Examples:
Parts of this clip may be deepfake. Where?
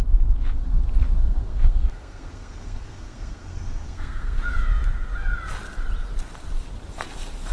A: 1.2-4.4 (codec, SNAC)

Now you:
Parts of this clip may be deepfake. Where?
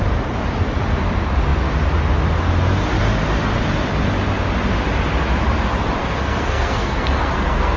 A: 6.0-7.8 (codec, SNAC)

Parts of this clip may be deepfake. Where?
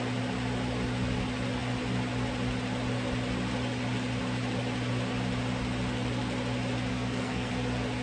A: 6.9-7.5 (codec, SNAC)